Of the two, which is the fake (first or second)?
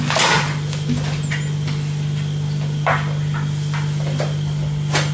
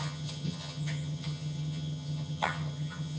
second